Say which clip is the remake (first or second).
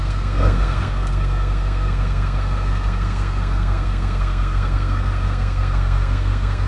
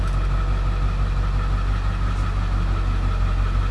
first